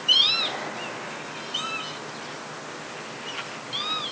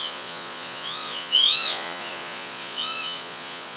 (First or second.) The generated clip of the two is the second